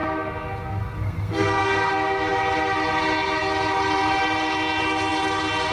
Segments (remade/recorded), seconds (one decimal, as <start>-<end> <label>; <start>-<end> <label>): 0.0-1.9 remade; 1.9-5.7 recorded